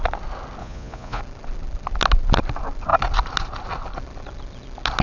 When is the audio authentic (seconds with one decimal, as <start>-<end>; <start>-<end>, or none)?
0.0-0.6; 1.2-5.0